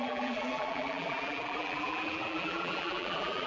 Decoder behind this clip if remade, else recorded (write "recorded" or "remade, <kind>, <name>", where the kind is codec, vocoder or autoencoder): remade, vocoder, BigVGAN v2